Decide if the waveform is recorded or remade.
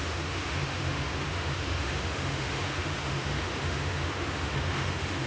remade